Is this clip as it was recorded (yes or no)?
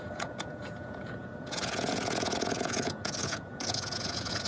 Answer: no